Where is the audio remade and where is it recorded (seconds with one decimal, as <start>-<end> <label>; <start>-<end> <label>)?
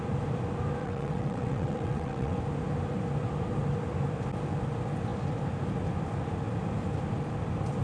0.0-0.8 recorded; 0.8-2.4 remade; 2.4-7.8 recorded